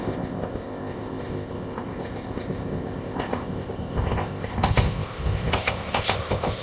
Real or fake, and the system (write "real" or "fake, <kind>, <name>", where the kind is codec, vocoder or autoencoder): fake, codec, ZipCodec